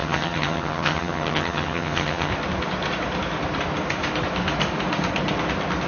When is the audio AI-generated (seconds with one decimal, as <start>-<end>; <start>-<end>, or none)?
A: 0.0-2.3